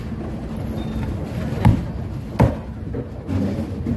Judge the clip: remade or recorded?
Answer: recorded